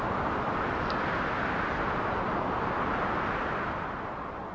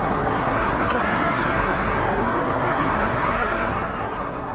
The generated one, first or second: second